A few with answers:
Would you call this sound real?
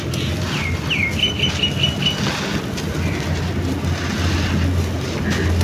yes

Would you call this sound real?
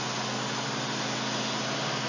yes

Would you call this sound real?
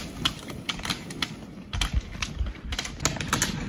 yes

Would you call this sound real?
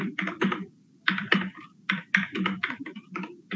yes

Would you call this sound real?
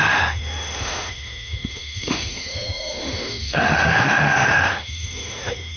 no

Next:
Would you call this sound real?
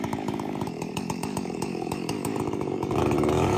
no